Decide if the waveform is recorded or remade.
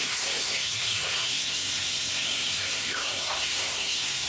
remade